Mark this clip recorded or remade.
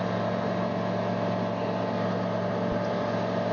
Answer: recorded